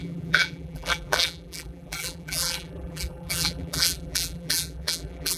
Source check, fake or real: fake